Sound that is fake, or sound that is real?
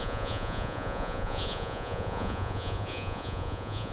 fake